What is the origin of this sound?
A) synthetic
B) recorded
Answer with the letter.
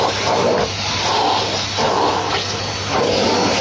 B